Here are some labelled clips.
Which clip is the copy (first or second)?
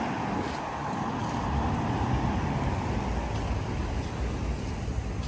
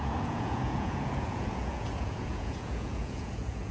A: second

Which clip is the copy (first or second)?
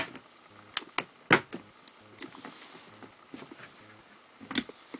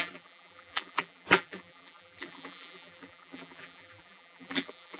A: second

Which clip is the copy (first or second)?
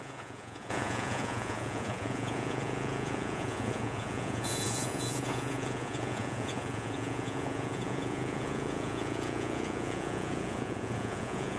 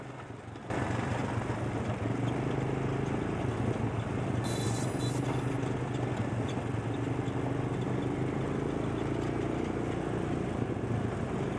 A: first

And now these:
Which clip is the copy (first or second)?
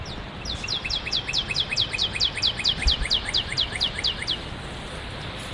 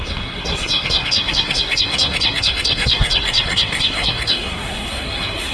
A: second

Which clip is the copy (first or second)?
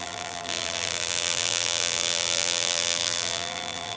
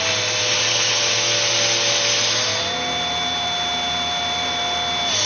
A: first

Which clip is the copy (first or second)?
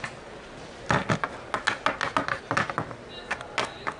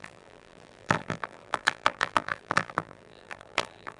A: second